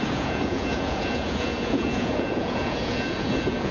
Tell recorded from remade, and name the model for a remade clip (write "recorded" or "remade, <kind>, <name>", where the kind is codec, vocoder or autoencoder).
remade, vocoder, Vocos